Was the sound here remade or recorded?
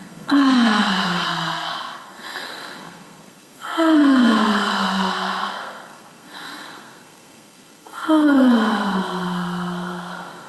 remade